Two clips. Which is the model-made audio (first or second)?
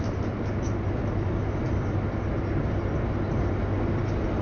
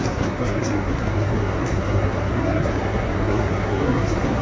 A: second